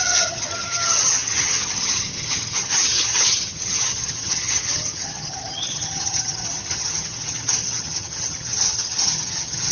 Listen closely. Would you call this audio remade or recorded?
remade